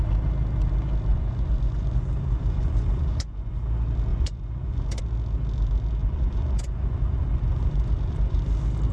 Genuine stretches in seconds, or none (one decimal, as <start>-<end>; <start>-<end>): 0.0-1.1; 3.6-4.1; 5.0-6.0; 8.4-8.9